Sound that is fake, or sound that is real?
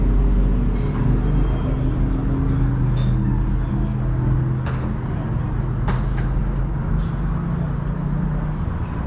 real